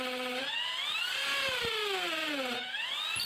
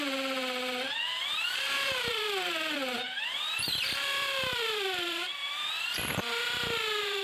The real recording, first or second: first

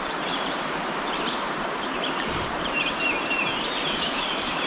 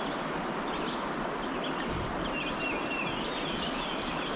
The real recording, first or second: second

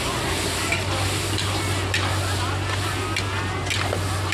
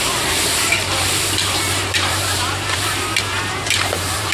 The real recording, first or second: first